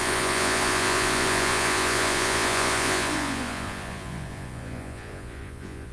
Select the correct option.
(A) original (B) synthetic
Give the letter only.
B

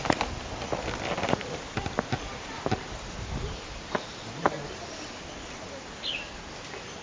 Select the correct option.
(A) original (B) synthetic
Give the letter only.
A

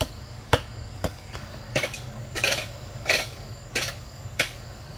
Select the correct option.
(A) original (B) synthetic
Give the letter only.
B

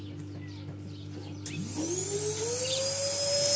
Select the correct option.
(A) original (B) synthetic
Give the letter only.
A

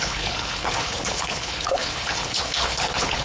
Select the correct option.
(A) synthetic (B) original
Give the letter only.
A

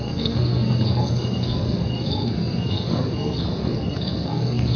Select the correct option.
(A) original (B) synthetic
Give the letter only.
B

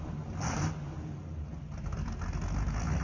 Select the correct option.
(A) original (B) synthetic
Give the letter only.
A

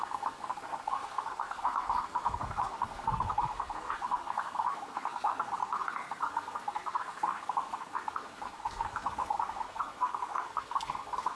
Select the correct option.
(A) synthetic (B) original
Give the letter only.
A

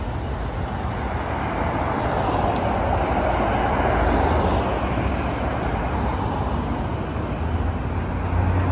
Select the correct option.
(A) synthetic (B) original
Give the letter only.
B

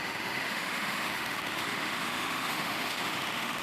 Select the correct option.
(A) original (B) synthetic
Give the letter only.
B